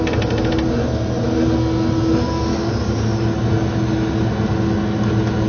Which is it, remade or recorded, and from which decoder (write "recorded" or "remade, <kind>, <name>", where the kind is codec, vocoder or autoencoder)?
recorded